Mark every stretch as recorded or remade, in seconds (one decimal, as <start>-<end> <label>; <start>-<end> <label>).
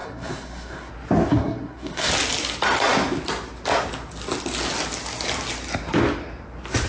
0.0-0.9 remade; 0.9-1.3 recorded; 1.3-2.1 remade; 2.1-6.9 recorded